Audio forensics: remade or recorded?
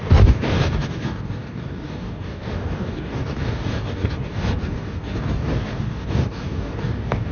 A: remade